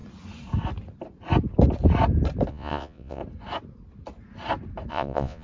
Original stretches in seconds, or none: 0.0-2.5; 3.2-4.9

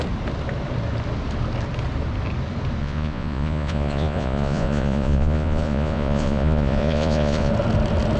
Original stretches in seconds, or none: 0.0-2.8; 7.5-8.2